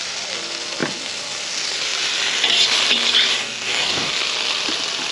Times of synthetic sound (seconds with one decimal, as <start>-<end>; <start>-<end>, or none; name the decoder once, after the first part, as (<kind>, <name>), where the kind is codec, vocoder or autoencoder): 3.4-4.1 (codec, DAC)